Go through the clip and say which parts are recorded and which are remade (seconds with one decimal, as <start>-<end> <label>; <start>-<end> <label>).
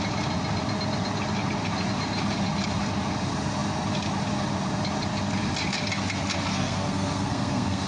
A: 0.0-6.5 recorded; 6.5-7.9 remade